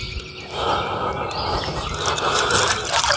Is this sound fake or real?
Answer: real